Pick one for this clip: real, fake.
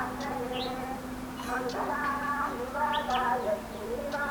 real